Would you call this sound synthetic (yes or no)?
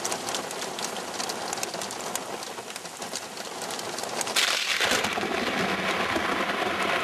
no